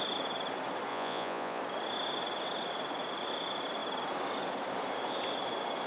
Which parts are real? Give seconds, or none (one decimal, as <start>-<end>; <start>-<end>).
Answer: 0.0-0.9; 1.6-5.9

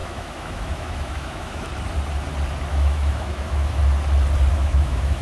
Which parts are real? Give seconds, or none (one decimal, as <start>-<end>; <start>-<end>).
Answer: 1.7-2.7; 3.8-4.5